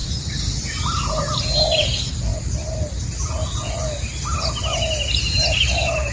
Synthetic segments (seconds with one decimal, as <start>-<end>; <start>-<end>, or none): none